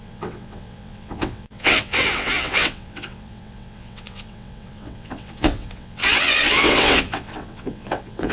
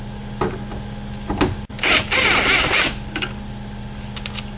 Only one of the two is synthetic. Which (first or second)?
first